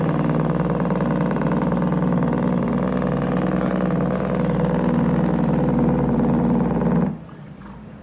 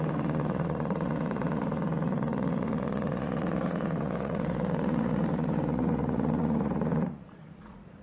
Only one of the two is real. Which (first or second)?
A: first